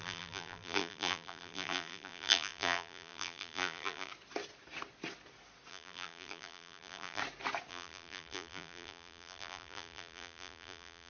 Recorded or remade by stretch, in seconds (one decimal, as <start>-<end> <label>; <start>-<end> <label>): 0.0-4.1 remade; 4.1-5.7 recorded; 5.7-7.2 remade; 7.2-7.7 recorded; 7.7-11.1 remade